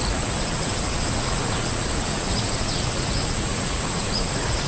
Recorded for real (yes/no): no